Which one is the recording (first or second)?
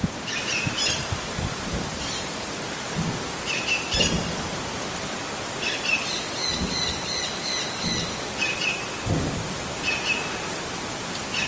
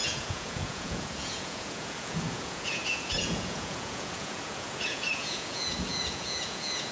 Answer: first